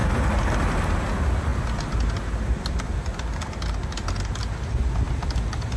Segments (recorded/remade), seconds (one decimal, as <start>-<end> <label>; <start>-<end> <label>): 0.0-5.8 recorded